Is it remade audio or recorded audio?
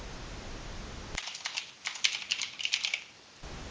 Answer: recorded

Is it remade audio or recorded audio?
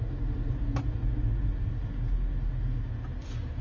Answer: recorded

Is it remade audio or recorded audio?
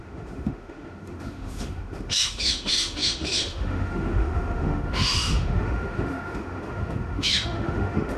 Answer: remade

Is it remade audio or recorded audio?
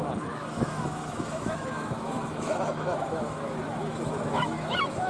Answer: remade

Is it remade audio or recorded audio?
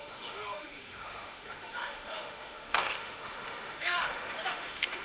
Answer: remade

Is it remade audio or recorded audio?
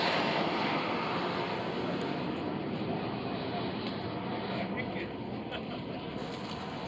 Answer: recorded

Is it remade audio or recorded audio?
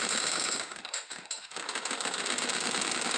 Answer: remade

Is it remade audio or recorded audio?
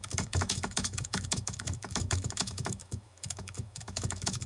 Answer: remade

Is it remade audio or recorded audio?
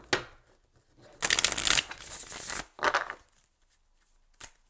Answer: recorded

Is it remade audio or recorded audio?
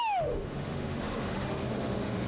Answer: remade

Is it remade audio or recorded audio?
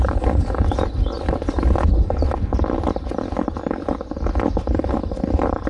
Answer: recorded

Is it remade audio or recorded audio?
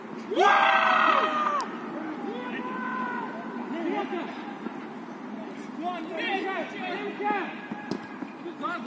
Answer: recorded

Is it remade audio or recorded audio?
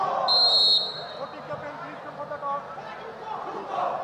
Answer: recorded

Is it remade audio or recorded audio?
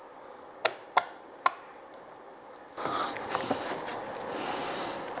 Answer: recorded